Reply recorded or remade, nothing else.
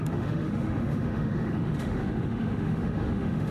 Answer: remade